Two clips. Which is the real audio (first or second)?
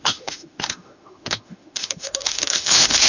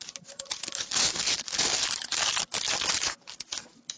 second